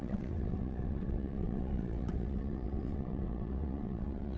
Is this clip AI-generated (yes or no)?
yes